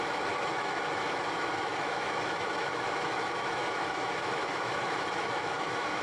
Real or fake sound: fake